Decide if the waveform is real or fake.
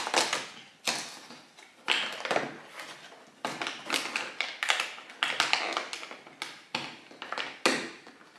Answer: real